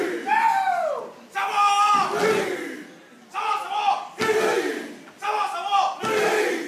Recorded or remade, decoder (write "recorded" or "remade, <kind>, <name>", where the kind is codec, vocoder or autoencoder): recorded